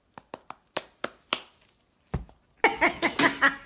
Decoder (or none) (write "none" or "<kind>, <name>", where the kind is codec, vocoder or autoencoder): none